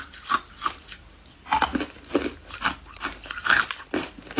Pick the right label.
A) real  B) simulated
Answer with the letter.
A